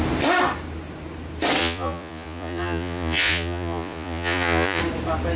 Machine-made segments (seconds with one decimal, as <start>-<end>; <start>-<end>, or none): 1.6-4.8